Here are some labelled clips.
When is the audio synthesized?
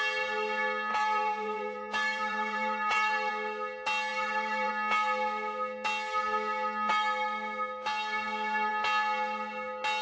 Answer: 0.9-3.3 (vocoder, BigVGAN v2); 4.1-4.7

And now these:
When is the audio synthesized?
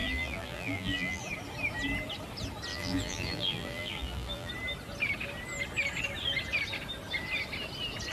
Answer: 0.0-1.2 (vocoder, BigVGAN v2); 2.7-4.5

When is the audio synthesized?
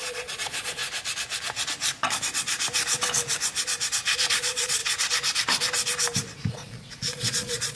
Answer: 0.0-0.8 (vocoder, Vocos); 4.3-4.8; 6.5-7.8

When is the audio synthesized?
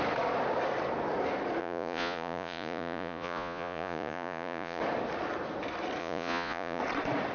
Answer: 1.6-4.8 (vocoder, Vocos); 6.0-6.8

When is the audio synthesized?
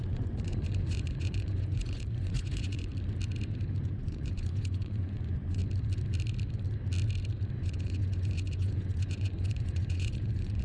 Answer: 0.0-2.9 (vocoder, Vocos); 3.8-5.6; 7.5-10.6